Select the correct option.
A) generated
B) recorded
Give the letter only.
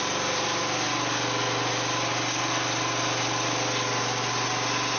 B